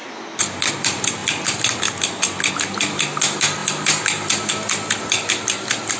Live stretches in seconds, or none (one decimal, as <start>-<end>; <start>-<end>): 0.0-6.0